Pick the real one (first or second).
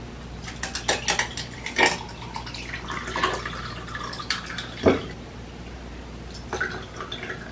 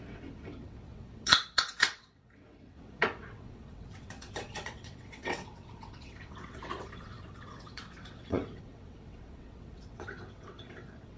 first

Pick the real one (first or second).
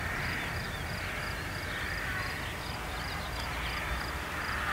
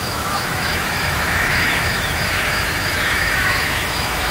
first